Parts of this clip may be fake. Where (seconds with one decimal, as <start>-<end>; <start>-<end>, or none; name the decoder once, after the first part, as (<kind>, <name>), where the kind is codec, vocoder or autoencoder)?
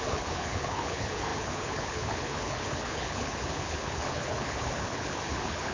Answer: 0.0-5.7 (codec, HILCodec)